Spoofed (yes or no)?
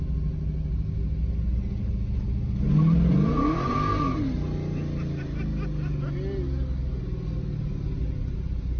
no